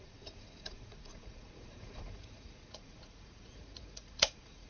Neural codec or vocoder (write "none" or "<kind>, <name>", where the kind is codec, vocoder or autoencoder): vocoder, Vocos